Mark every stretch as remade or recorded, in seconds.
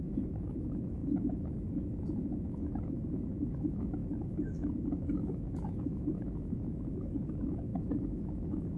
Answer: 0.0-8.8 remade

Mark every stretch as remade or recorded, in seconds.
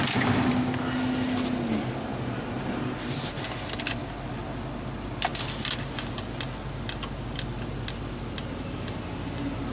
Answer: 0.0-9.7 recorded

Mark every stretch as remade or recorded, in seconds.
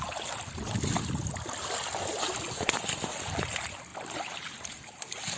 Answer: 0.0-5.4 recorded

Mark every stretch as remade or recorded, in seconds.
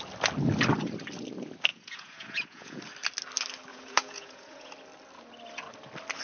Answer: 0.0-1.7 recorded; 1.7-2.8 remade; 2.8-3.7 recorded; 3.7-4.7 remade; 4.7-6.2 recorded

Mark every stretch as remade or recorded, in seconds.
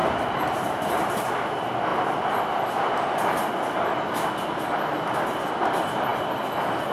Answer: 0.0-1.3 remade; 1.3-6.9 recorded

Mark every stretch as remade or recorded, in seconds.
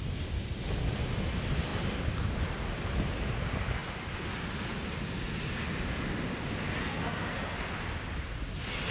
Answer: 0.0-6.8 recorded; 6.8-7.6 remade; 7.6-8.9 recorded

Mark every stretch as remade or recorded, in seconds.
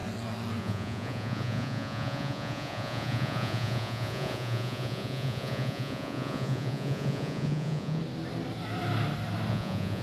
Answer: 0.0-0.6 recorded; 0.6-8.0 remade; 8.0-9.5 recorded; 9.5-10.0 remade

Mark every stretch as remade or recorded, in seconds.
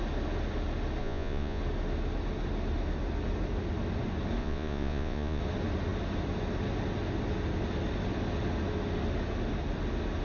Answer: 0.0-1.0 recorded; 1.0-1.6 remade; 1.6-4.4 recorded; 4.4-5.4 remade; 5.4-10.2 recorded